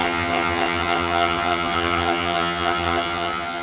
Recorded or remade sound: remade